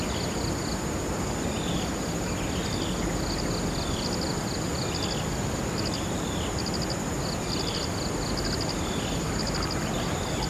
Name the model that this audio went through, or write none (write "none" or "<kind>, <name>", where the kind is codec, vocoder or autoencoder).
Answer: none